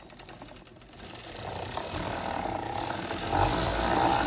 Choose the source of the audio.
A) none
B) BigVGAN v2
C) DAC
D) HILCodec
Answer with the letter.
A